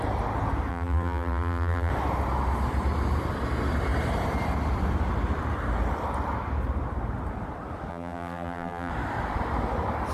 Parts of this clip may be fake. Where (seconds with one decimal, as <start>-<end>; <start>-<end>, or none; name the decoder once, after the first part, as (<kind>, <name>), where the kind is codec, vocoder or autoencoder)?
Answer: 0.7-1.9 (vocoder, BigVGAN v2); 7.9-8.9